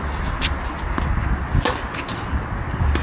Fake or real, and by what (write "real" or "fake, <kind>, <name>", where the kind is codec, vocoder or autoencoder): real